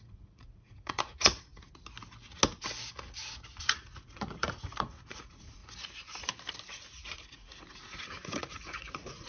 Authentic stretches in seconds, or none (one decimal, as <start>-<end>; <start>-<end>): 1.5-3.6; 5.6-6.7